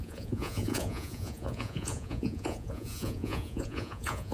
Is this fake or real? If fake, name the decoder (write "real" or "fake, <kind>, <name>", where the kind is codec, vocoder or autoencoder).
fake, vocoder, Vocos